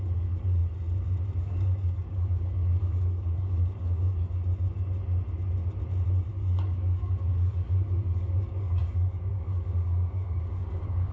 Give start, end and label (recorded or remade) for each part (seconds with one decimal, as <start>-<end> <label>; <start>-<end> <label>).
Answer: 0.0-0.6 remade; 0.6-1.4 recorded; 1.4-4.4 remade; 4.4-6.3 recorded; 6.3-11.1 remade